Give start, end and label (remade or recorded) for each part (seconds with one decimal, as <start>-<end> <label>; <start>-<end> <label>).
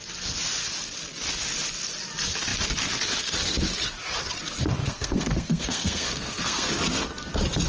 0.0-4.8 recorded; 4.8-6.7 remade; 6.7-7.7 recorded